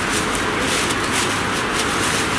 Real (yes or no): yes